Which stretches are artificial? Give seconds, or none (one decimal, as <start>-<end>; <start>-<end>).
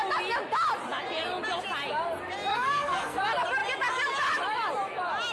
2.5-3.2